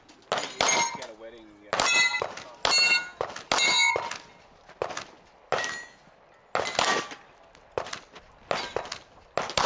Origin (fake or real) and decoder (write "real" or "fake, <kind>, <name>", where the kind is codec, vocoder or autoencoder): real